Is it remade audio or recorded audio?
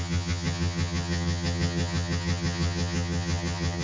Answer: remade